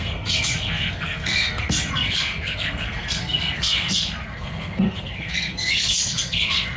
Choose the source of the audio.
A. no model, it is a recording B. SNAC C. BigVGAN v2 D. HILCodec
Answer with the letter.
B